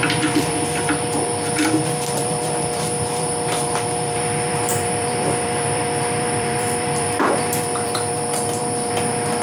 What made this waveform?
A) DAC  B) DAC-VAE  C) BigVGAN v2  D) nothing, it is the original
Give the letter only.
C